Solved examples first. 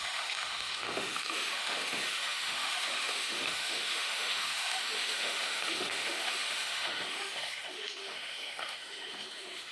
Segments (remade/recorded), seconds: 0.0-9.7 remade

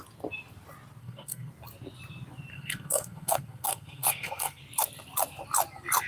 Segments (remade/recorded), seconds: 0.0-1.0 recorded; 1.0-1.5 remade; 1.5-2.5 recorded; 2.5-4.6 remade; 4.6-6.1 recorded

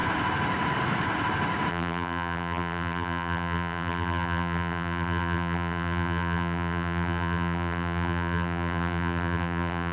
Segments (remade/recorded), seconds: 0.0-1.7 recorded; 1.7-9.9 remade

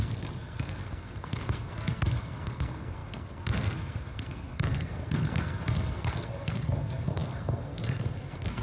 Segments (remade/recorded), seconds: 0.0-8.6 remade

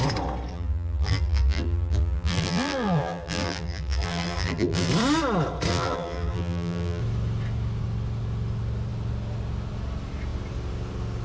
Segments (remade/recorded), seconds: 0.0-0.5 recorded; 0.5-4.9 remade; 4.9-5.7 recorded; 5.7-7.0 remade; 7.0-11.2 recorded

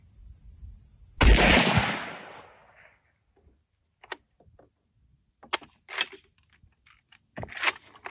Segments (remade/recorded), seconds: 0.0-8.1 recorded

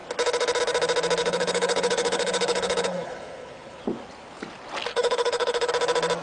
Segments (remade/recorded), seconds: 0.0-1.2 recorded; 1.2-3.8 remade; 3.8-4.9 recorded; 4.9-5.7 remade; 5.7-6.2 recorded

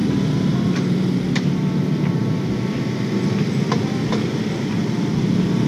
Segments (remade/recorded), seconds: 0.0-2.0 remade; 2.0-5.7 recorded